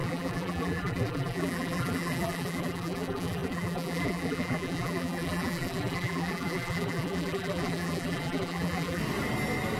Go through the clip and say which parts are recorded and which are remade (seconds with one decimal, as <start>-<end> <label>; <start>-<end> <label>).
0.0-9.0 remade; 9.0-9.8 recorded